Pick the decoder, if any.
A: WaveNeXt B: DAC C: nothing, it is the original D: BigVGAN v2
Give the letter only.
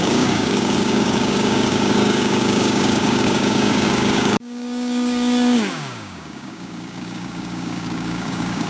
B